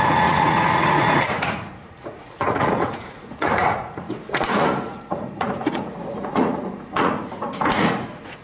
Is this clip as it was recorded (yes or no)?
no